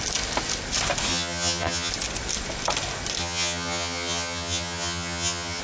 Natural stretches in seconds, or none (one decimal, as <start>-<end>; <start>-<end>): 0.0-1.1; 1.9-3.2